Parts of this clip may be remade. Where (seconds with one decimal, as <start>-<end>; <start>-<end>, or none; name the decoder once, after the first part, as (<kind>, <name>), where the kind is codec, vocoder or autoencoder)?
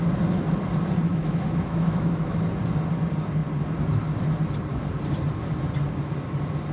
1.1-2.4 (autoencoder, DAC-VAE)